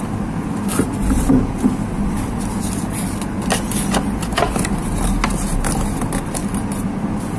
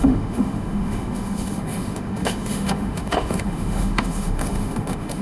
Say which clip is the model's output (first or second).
second